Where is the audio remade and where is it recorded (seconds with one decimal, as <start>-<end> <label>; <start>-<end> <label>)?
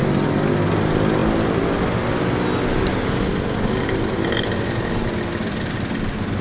0.0-6.4 recorded